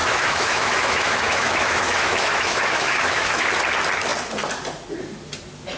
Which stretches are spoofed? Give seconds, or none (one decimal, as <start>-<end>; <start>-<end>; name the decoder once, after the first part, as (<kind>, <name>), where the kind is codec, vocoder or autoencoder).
0.0-3.5 (autoencoder, DAC-VAE)